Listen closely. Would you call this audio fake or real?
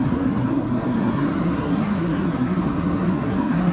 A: fake